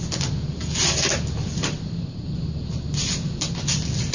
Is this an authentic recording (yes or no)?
yes